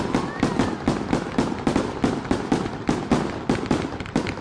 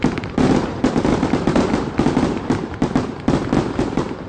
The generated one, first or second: second